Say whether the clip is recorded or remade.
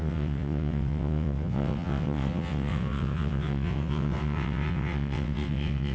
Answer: remade